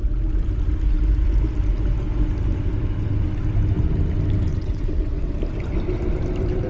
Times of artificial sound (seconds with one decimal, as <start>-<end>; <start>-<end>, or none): 4.5-5.3